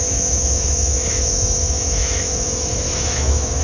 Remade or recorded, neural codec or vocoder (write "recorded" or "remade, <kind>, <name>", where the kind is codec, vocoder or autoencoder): remade, autoencoder, DAC-VAE